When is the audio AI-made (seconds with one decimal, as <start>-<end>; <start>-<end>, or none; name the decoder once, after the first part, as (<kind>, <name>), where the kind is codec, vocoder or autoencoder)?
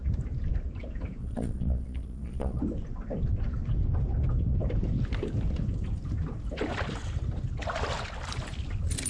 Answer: 1.2-2.6 (vocoder, Vocos)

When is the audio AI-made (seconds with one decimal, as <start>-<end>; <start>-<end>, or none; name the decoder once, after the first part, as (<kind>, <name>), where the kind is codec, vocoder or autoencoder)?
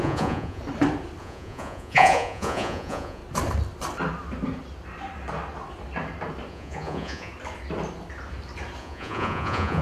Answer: 0.0-0.6 (vocoder, Vocos); 1.2-3.2; 6.5-7.3; 8.8-9.8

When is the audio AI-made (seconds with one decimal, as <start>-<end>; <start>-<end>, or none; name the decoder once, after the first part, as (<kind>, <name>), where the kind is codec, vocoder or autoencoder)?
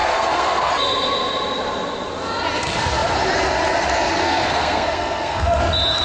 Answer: 0.0-0.7 (codec, SNAC); 4.2-5.6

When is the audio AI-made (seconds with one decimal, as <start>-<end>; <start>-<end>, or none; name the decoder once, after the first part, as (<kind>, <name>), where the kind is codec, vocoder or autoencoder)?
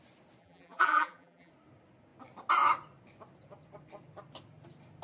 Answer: 0.4-1.5 (vocoder, BigVGAN v2)